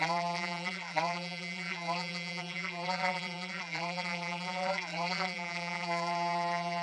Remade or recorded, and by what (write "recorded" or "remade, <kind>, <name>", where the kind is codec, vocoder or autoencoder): remade, vocoder, BigVGAN v2